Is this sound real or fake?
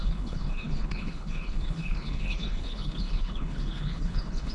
fake